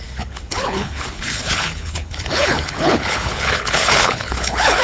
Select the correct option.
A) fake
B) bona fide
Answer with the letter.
A